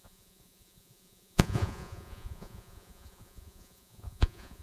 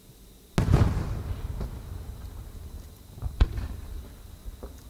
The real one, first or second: second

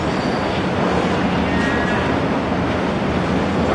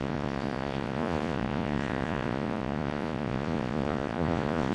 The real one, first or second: first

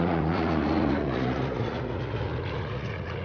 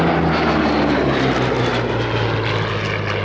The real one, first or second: second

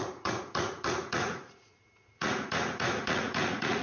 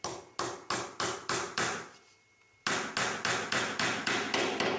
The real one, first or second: second